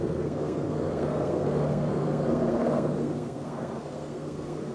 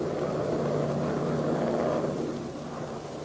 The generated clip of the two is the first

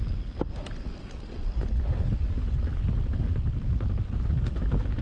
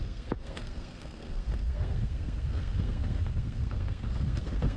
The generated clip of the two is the second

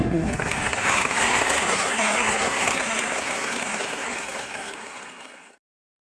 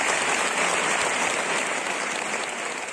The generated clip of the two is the first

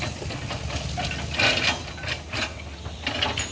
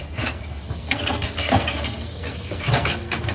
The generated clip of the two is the second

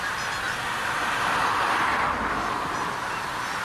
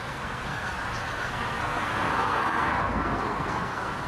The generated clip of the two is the second